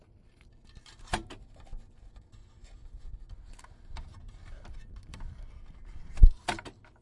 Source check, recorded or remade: recorded